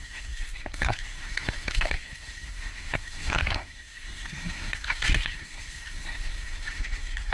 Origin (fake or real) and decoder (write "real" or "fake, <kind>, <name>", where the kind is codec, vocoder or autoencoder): fake, codec, SNAC